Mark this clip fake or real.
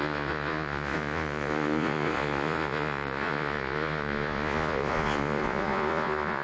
fake